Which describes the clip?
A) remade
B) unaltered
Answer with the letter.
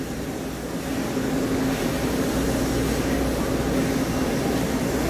B